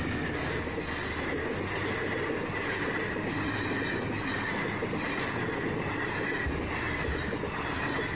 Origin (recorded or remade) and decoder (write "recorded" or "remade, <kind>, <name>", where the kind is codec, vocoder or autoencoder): recorded